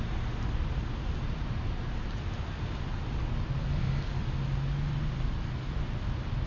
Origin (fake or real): real